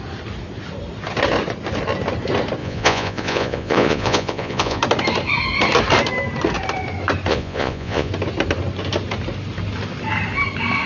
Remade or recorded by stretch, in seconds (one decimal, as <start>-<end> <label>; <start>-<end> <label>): 0.0-2.6 recorded; 2.6-4.8 remade; 4.8-7.3 recorded; 7.3-8.1 remade; 8.1-10.9 recorded